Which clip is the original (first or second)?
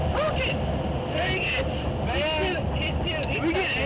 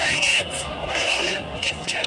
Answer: first